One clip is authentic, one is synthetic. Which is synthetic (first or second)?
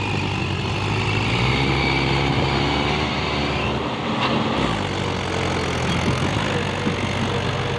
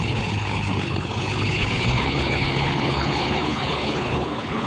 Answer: second